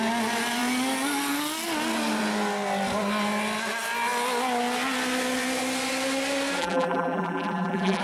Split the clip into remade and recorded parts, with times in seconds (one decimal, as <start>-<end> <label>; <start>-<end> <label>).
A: 0.0-6.6 recorded; 6.6-8.0 remade